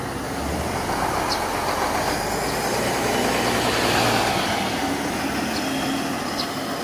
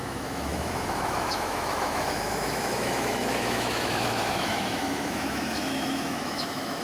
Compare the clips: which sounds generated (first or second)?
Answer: second